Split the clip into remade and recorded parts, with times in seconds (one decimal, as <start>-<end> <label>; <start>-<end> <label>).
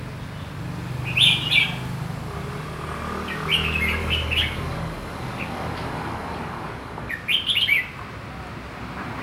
0.0-4.0 recorded; 4.0-7.1 remade; 7.1-9.2 recorded